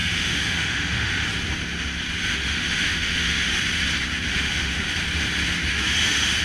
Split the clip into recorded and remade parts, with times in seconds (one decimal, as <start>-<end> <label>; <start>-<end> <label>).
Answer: 0.0-1.2 remade; 1.2-2.3 recorded; 2.3-3.6 remade; 3.6-4.3 recorded; 4.3-4.9 remade; 4.9-5.6 recorded; 5.6-6.4 remade